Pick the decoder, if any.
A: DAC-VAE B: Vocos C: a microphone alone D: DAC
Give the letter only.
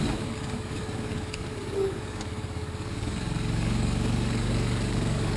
D